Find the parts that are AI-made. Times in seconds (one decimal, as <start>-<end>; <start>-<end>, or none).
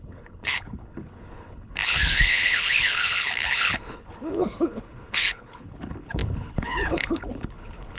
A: 0.0-8.0